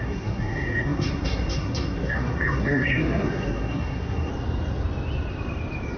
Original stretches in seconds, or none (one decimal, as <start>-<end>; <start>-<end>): 4.3-6.0